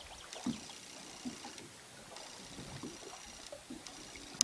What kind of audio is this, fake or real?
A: real